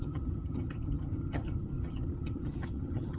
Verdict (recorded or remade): remade